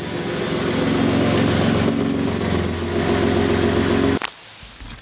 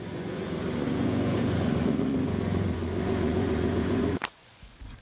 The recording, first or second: first